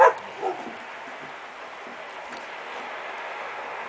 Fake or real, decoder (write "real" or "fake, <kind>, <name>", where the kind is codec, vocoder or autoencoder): real